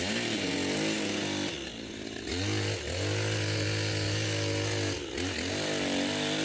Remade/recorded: recorded